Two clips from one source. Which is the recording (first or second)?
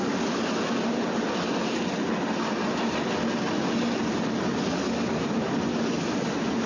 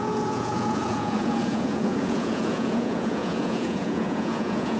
first